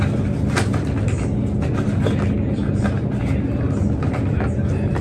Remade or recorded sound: recorded